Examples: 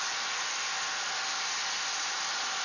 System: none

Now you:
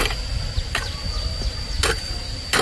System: none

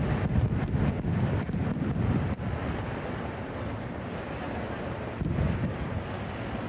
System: none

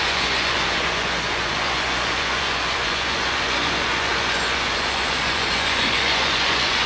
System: vocoder, Vocos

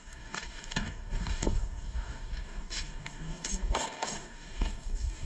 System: codec, DAC